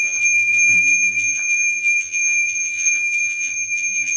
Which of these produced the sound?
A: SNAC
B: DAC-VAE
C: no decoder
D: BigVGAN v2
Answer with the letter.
D